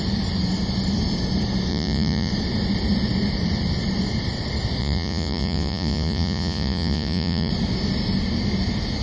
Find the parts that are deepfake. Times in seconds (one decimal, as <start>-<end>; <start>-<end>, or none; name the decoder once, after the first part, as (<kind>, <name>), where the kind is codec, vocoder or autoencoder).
1.7-2.3 (vocoder, Vocos); 4.8-7.5